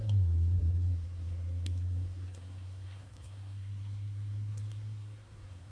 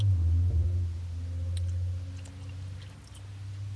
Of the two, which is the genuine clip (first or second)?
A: second